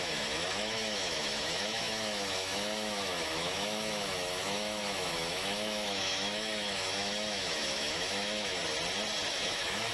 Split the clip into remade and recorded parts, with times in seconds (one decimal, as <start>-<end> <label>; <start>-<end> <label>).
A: 0.0-8.6 remade; 8.6-9.3 recorded; 9.3-9.9 remade